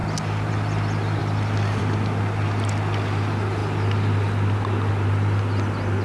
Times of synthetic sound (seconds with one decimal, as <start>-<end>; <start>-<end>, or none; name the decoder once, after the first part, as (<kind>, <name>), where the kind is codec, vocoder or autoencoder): none